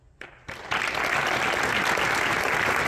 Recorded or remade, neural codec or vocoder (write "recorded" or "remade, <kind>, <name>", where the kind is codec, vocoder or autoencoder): recorded